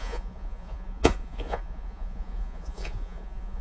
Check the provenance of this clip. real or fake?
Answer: fake